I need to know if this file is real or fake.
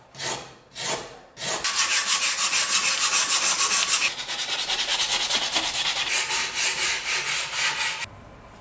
real